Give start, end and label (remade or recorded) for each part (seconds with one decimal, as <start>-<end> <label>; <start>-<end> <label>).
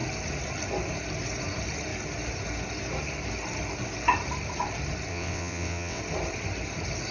0.0-5.1 recorded; 5.1-6.0 remade; 6.0-7.1 recorded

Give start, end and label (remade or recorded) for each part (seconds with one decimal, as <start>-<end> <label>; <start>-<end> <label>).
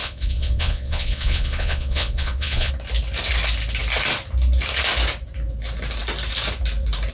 0.0-2.7 remade; 2.7-7.1 recorded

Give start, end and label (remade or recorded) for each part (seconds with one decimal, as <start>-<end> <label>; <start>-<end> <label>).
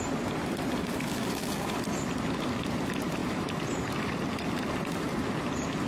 0.0-3.2 recorded; 3.2-4.1 remade; 4.1-5.9 recorded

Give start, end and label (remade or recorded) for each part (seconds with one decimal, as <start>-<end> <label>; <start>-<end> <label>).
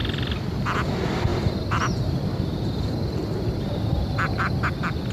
0.0-1.3 recorded; 1.3-2.4 remade; 2.4-3.2 recorded; 3.2-3.9 remade; 3.9-5.1 recorded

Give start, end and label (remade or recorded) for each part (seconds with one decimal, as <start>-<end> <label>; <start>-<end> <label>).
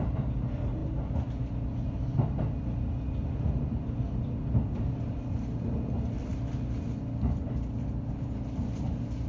0.0-9.3 recorded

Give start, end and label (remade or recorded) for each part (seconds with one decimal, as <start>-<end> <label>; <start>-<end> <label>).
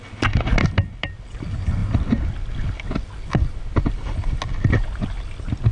0.0-5.7 recorded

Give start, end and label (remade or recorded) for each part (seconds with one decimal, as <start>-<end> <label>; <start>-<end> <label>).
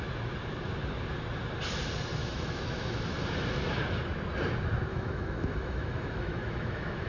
0.0-2.2 recorded; 2.2-3.0 remade; 3.0-4.9 recorded; 4.9-7.1 remade